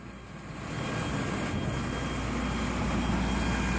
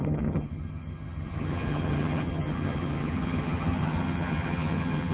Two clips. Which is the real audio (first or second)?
first